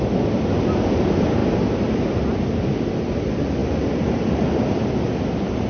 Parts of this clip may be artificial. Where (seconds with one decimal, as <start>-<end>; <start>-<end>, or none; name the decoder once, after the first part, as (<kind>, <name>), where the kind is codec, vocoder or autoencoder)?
1.4-2.6 (vocoder, BigVGAN v2)